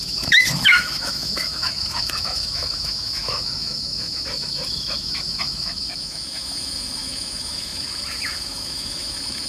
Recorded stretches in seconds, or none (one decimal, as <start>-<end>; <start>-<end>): none